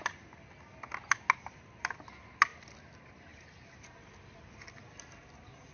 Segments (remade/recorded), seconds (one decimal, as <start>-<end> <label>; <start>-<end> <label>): 0.0-5.7 recorded